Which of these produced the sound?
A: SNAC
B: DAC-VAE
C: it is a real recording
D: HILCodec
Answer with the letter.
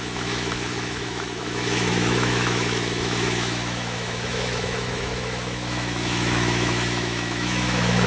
B